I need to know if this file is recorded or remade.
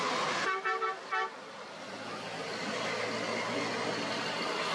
recorded